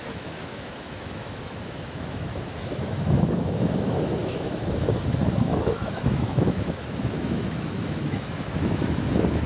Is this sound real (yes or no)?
no